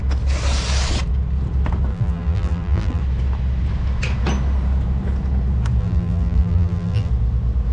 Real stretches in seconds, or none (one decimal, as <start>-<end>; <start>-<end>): 0.0-1.9; 3.0-5.8; 7.1-7.7

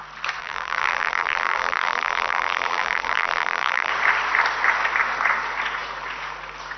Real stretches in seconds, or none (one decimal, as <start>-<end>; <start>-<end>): 0.0-0.4; 3.9-6.8

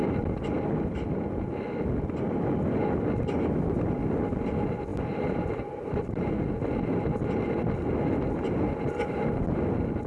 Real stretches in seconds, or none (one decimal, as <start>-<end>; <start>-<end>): 0.0-4.9; 6.4-10.1

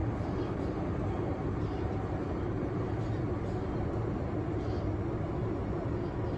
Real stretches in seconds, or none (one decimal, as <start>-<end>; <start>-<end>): 2.9-6.4

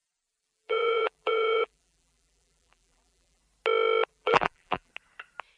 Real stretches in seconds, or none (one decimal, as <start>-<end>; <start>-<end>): 3.4-4.1; 4.9-5.6

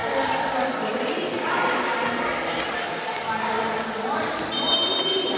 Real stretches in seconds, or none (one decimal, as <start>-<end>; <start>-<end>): 2.8-3.5

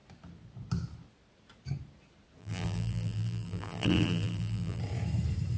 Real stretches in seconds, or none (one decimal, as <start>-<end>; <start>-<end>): 0.0-2.4; 4.8-5.6